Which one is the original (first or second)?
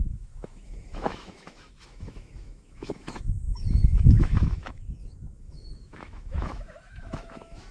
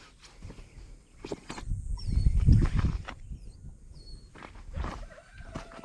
second